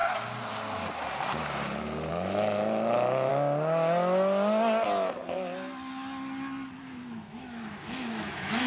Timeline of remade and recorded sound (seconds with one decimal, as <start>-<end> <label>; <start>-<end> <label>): 0.0-2.1 recorded; 2.1-3.3 remade; 3.3-6.8 recorded; 6.8-8.7 remade